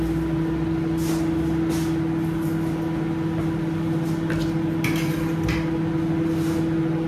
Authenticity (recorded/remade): recorded